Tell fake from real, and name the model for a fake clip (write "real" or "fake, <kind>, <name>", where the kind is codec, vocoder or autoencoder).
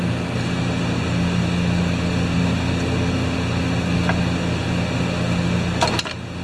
real